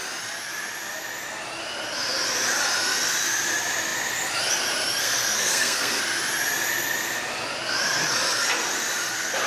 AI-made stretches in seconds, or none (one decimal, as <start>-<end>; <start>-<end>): 5.0-6.0